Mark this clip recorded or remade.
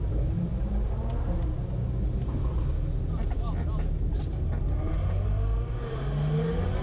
recorded